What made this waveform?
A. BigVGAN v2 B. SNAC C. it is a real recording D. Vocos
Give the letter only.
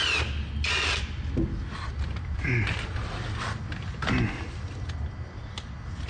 C